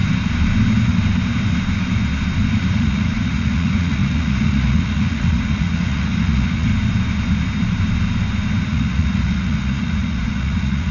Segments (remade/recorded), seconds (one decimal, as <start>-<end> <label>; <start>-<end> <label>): 0.0-2.7 recorded; 2.7-6.7 remade; 6.7-8.7 recorded; 8.7-10.9 remade